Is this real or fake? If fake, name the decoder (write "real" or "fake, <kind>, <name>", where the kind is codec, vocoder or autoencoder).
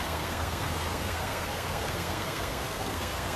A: fake, codec, SNAC